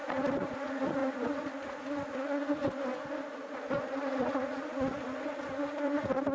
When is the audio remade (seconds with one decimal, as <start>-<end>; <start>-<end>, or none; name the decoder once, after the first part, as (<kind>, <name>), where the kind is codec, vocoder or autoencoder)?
0.0-2.6 (vocoder, Vocos); 3.3-6.3